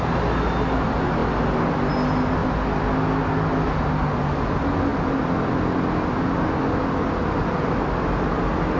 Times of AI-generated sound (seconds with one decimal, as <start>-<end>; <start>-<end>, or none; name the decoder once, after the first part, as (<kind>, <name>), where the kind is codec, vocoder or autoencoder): none